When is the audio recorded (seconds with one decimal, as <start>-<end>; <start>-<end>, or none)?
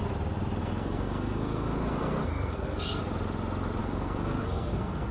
0.0-0.6; 3.0-3.8